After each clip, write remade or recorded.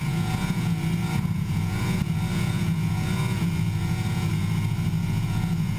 remade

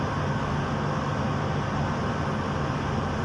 recorded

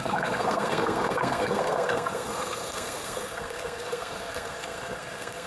remade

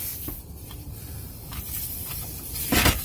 recorded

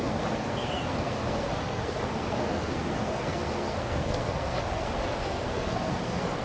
remade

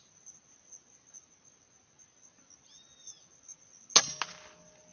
recorded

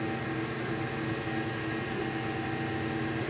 recorded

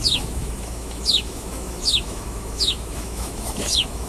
remade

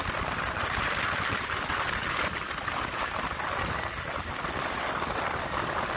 recorded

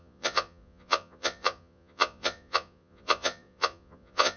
remade